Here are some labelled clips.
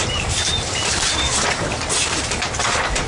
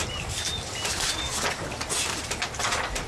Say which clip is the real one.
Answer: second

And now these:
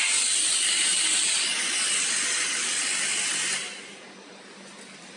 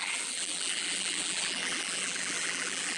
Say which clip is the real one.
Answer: first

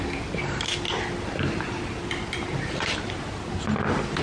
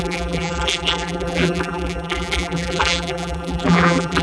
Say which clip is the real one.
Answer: first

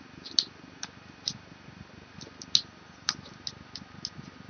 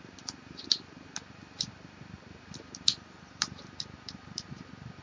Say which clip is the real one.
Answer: first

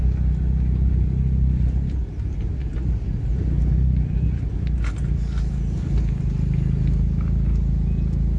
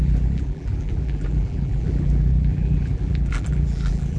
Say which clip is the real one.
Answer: first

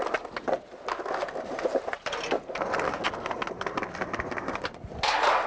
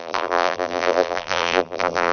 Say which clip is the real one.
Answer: first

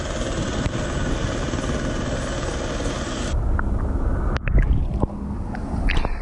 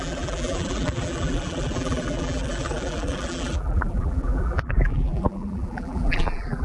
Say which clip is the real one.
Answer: first